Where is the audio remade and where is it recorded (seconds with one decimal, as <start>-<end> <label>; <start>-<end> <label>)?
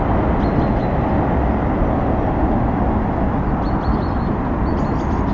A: 0.0-5.3 recorded